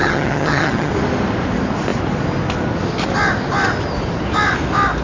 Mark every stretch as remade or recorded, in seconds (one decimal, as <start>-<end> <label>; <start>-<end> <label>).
0.0-0.9 remade; 0.9-5.0 recorded